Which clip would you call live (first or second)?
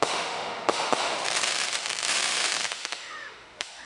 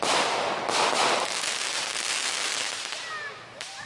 second